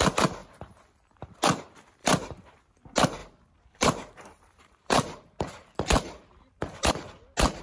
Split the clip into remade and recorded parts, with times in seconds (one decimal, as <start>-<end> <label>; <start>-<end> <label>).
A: 0.0-2.0 recorded; 2.0-2.6 remade; 2.6-3.2 recorded; 3.2-6.9 remade; 6.9-7.6 recorded